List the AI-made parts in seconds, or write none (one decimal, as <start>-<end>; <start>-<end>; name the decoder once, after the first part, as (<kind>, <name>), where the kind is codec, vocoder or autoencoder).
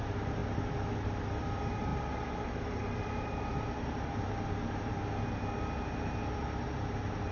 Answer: 1.9-4.9 (vocoder, BigVGAN v2)